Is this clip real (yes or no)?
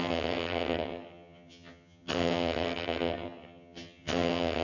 no